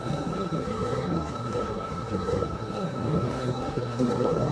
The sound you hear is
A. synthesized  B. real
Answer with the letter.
A